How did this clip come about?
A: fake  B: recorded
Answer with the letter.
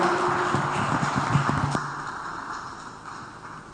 B